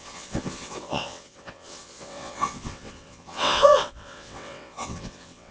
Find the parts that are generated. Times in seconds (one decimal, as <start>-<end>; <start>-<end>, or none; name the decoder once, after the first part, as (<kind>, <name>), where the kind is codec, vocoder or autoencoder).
0.0-5.5 (vocoder, WaveNeXt)